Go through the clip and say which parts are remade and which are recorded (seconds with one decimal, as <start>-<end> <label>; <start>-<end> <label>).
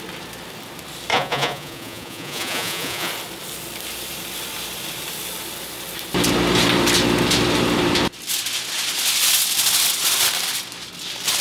0.0-1.1 recorded; 1.1-3.1 remade; 3.1-11.4 recorded